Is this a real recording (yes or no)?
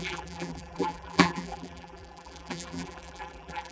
no